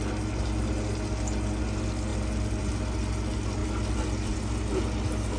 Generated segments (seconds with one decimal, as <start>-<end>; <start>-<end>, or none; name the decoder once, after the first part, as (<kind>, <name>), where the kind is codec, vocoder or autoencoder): none